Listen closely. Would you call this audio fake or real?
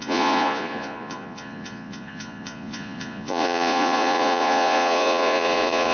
fake